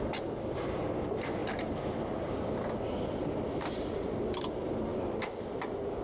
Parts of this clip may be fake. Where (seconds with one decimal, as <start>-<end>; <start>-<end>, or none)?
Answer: none